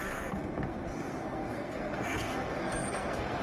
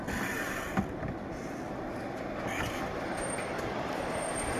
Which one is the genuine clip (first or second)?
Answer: second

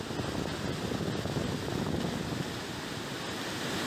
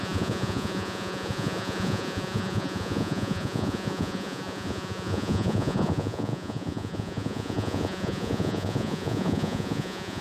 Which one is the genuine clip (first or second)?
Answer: first